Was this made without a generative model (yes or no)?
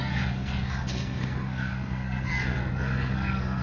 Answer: no